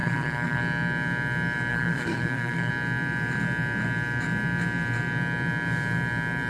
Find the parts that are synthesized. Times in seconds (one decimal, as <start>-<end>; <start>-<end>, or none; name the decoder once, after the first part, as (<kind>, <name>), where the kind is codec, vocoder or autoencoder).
0.0-0.6 (codec, SNAC); 1.7-2.7